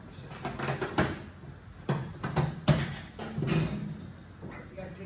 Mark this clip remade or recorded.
recorded